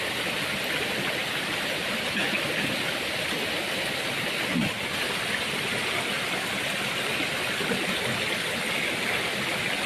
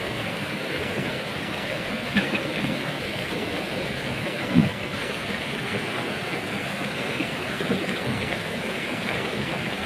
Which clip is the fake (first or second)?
second